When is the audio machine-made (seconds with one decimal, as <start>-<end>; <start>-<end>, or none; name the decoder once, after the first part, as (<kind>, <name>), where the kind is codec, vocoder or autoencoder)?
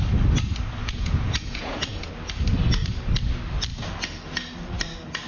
0.8-2.1 (vocoder, Vocos)